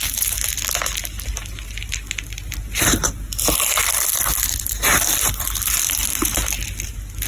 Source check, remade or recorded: recorded